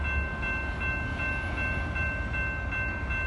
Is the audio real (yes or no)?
yes